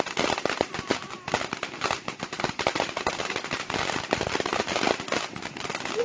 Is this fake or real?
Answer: real